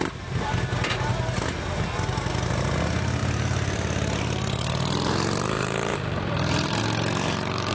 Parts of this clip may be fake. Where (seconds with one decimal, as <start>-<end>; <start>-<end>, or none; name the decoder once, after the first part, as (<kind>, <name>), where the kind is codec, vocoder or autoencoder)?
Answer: 3.2-6.8 (vocoder, BigVGAN v2)